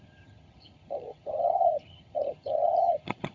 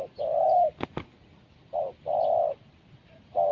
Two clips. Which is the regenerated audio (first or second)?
first